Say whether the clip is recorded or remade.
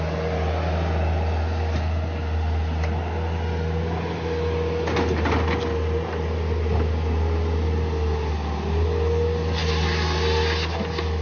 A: recorded